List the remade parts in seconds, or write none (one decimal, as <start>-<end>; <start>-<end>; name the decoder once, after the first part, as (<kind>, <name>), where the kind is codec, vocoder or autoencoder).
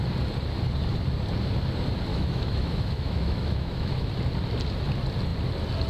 2.1-4.1 (autoencoder, DAC-VAE)